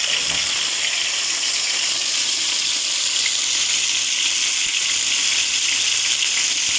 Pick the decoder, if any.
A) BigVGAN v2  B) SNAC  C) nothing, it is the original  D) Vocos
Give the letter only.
C